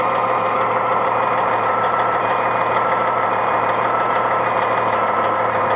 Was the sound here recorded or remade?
remade